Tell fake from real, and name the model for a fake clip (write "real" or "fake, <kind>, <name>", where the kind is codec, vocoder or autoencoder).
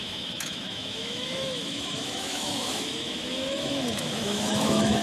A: fake, autoencoder, DAC-VAE